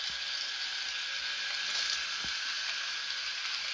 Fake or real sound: real